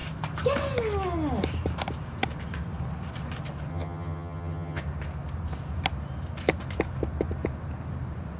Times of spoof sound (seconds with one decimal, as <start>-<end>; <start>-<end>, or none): 3.7-4.8